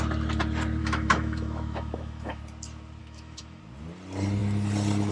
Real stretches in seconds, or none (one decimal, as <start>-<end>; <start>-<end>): 0.0-0.8; 2.4-3.0; 3.6-5.1